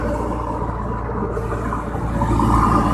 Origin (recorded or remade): remade